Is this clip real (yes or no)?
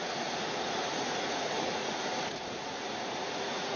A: no